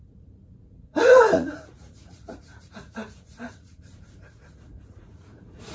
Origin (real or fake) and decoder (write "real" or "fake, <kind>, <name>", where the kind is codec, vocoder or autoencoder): fake, vocoder, Vocos